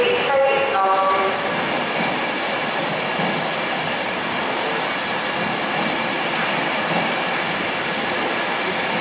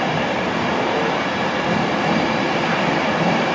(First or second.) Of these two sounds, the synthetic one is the second